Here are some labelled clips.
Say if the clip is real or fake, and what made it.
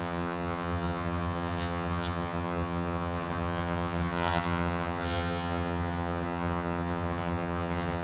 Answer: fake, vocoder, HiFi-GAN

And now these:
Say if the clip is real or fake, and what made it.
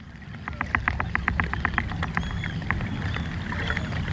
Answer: real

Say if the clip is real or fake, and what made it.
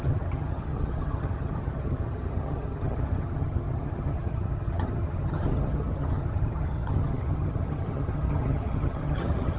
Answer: fake, vocoder, HiFi-GAN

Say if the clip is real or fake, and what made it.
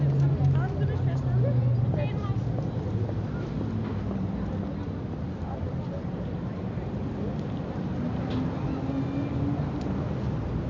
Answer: real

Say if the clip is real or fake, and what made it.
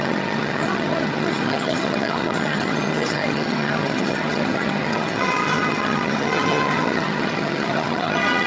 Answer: fake, vocoder, HiFi-GAN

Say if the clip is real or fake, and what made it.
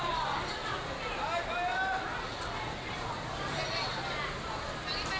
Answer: real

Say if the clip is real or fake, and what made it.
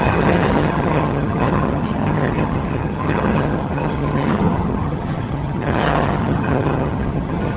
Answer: fake, vocoder, HiFi-GAN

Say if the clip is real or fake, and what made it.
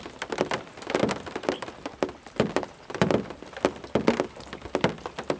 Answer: real